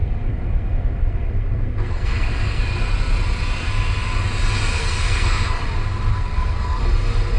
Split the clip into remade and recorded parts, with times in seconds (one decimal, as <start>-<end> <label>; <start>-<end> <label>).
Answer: 0.0-2.6 remade; 2.6-4.7 recorded; 4.7-5.6 remade; 5.6-6.1 recorded; 6.1-6.8 remade; 6.8-7.4 recorded